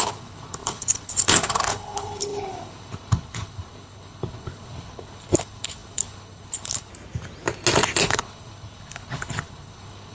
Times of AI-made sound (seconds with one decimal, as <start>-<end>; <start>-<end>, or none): 0.0-6.9; 8.0-10.1